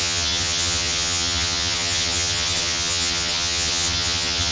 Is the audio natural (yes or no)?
no